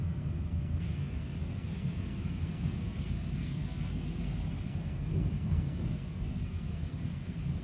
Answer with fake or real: fake